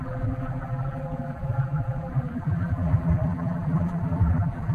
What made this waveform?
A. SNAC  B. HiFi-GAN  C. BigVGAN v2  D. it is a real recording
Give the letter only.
C